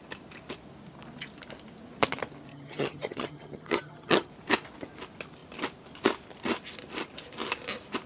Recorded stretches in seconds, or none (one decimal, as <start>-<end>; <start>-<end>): 0.0-2.5; 4.3-8.1